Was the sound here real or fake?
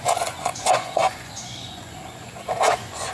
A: fake